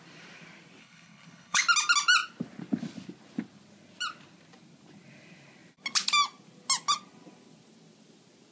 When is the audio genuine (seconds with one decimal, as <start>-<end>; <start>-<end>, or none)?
0.0-0.8; 1.6-8.5